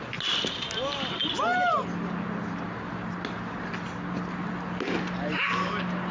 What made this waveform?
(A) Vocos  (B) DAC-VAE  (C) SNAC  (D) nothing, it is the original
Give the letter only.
D